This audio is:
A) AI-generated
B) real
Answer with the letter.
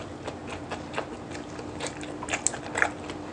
B